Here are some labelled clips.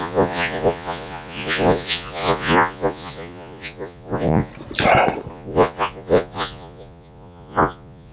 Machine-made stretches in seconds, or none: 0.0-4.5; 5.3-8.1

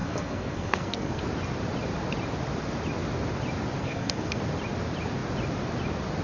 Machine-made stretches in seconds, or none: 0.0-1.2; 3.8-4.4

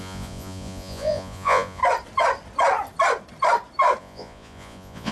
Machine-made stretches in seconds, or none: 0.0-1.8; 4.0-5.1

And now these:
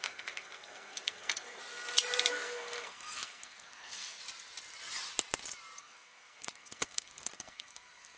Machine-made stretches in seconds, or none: 0.0-1.6; 2.3-4.2; 5.8-8.2

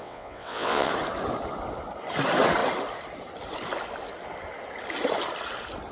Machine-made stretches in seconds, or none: 0.0-0.9

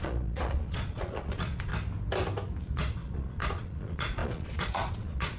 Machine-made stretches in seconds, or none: 0.0-1.7; 2.6-5.4

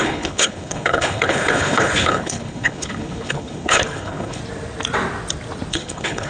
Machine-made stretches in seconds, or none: 0.0-4.4; 5.7-6.3